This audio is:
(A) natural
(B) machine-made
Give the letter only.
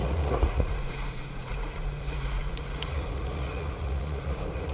B